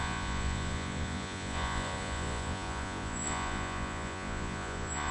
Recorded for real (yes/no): no